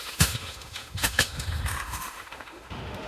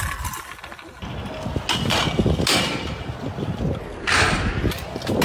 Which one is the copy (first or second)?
first